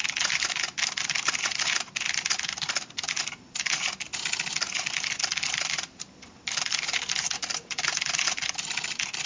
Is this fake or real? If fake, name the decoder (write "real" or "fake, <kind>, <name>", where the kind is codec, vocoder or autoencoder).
real